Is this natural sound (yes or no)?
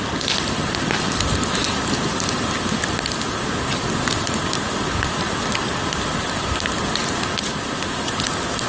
yes